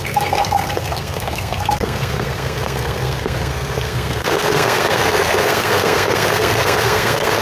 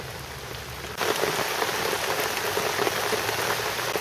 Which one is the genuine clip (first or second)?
second